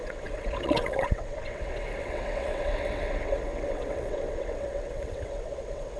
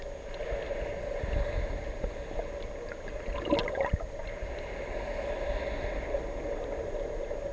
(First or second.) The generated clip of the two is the first